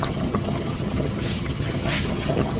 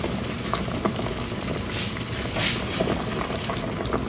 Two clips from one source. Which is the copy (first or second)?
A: first